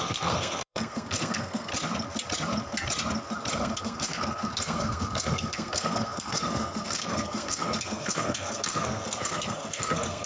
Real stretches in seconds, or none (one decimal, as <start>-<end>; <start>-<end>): 1.7-3.5